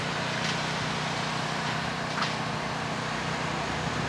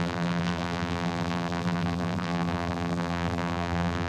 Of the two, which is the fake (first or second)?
second